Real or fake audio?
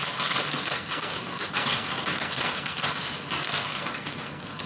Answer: fake